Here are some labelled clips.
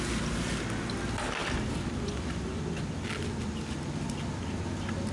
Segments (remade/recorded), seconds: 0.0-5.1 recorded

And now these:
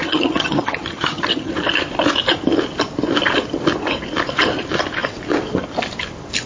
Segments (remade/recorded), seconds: 0.0-1.5 remade; 1.5-6.5 recorded